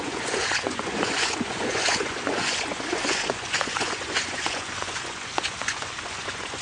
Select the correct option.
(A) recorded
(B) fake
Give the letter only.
B